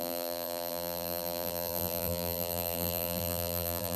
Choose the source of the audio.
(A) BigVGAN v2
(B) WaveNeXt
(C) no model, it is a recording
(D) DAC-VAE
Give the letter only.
A